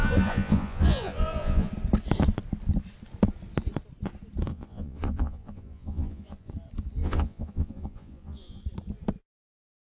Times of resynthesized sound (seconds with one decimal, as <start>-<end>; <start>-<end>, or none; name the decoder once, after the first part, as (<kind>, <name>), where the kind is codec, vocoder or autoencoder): 0.0-1.7 (vocoder, Vocos); 4.5-6.5; 7.0-8.6